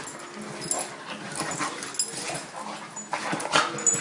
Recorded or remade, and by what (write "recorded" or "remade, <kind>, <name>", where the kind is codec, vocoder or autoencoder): recorded